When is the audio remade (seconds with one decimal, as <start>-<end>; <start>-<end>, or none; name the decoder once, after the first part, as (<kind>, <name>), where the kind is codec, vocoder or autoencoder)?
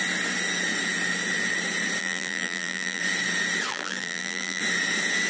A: 2.0-3.0 (vocoder, BigVGAN v2); 3.7-4.6